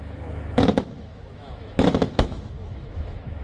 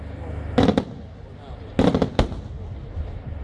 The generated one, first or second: first